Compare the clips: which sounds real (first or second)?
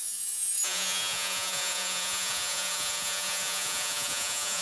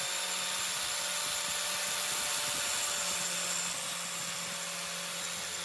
second